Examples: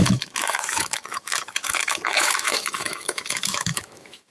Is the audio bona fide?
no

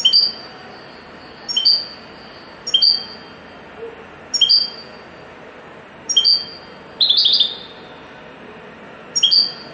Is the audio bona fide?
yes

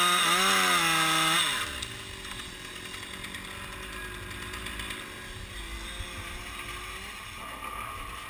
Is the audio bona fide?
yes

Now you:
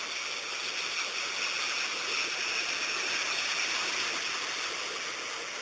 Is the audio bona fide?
yes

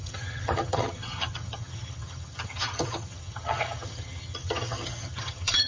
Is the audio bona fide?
no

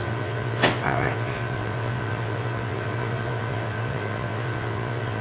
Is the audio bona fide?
no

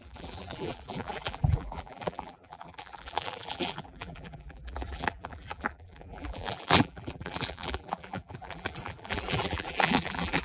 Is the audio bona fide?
no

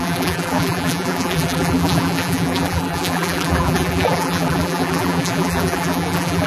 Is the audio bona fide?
no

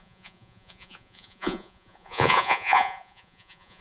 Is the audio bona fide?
no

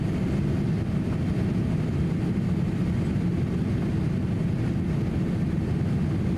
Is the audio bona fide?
yes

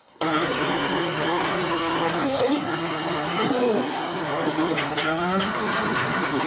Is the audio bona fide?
no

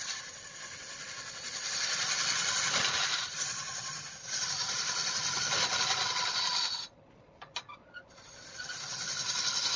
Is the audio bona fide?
yes